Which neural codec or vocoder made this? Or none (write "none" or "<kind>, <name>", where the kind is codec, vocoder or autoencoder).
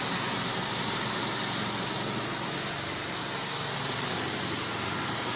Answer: none